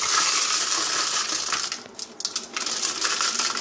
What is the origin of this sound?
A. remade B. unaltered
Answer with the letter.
B